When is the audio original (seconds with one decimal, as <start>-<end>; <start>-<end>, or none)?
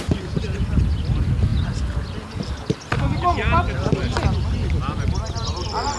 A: 0.0-6.0